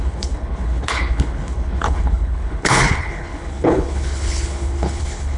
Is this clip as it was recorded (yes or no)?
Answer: no